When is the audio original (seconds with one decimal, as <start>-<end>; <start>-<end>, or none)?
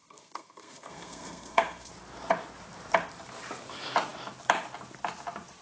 1.9-5.6